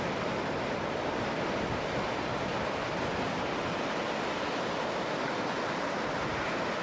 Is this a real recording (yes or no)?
yes